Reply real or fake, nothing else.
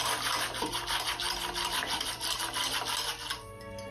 real